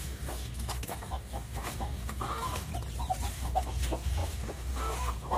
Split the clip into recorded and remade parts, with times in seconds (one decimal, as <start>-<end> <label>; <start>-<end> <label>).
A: 0.0-2.7 remade; 2.7-3.3 recorded; 3.3-5.4 remade